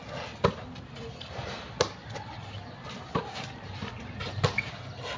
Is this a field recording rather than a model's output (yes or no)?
yes